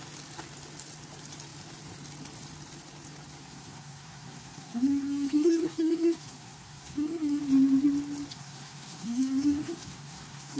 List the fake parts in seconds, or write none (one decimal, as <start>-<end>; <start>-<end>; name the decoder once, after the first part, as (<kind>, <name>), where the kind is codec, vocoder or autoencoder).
3.4-7.4 (codec, SNAC); 8.3-10.6